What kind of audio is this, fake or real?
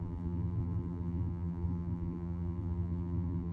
fake